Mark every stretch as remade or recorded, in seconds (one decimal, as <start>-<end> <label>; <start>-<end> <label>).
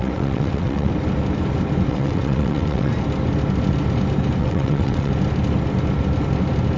0.0-0.9 remade; 0.9-1.9 recorded; 1.9-2.9 remade; 2.9-4.4 recorded; 4.4-5.1 remade; 5.1-6.8 recorded